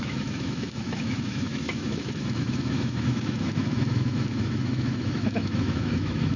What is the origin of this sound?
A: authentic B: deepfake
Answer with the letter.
B